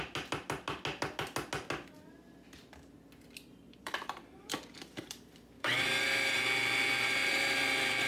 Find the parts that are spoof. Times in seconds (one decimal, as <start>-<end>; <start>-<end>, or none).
3.5-5.9; 7.2-8.1